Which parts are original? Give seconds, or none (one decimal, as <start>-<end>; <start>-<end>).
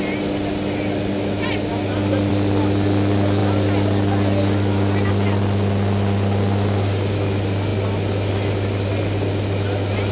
0.0-10.1